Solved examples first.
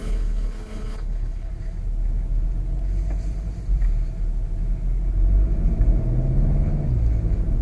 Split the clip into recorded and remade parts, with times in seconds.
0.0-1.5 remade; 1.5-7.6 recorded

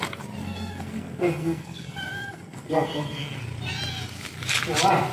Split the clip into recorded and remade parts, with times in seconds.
0.0-0.4 recorded; 0.4-3.4 remade; 3.4-5.1 recorded